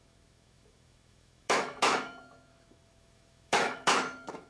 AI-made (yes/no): yes